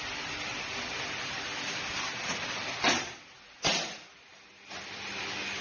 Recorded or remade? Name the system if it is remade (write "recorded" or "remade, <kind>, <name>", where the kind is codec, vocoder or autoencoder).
recorded